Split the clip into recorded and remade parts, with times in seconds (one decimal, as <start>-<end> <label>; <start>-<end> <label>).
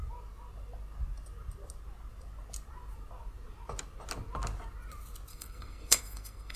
0.0-5.3 recorded; 5.3-6.6 remade